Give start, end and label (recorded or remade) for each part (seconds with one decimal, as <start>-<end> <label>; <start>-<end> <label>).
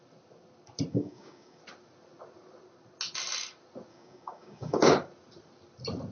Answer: 0.0-0.9 recorded; 0.9-1.6 remade; 1.6-3.9 recorded; 3.9-4.9 remade; 4.9-6.1 recorded